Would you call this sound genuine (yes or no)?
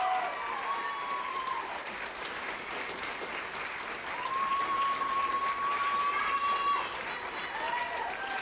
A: yes